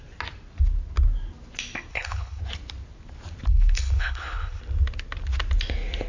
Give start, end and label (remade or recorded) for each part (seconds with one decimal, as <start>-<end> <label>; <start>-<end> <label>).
0.0-1.9 recorded; 1.9-2.4 remade; 2.4-3.5 recorded; 3.5-4.6 remade; 4.6-6.1 recorded